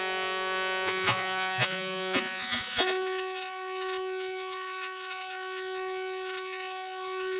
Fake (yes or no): yes